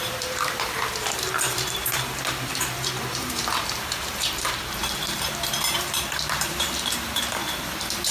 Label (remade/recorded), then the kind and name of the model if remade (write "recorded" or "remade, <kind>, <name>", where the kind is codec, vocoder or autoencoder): remade, vocoder, BigVGAN v2